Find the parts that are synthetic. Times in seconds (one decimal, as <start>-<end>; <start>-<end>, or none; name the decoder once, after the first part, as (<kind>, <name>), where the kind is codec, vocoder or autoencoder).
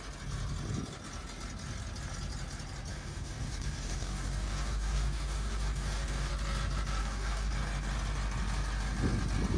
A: 2.9-6.3 (codec, DAC); 7.0-7.5